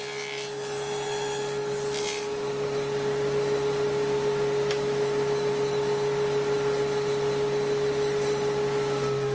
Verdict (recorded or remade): recorded